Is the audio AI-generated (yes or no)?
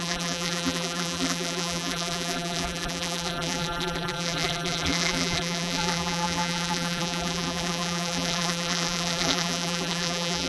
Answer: yes